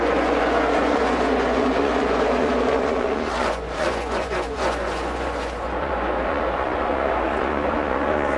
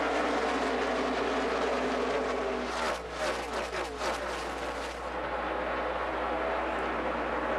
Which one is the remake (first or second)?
first